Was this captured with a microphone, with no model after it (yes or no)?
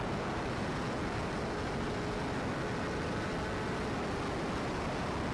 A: yes